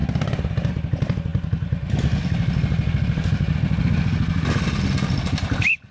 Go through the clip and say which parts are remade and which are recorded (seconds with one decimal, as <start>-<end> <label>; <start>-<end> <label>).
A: 0.0-0.7 remade; 0.7-5.9 recorded